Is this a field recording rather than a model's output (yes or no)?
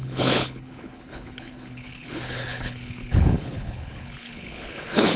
no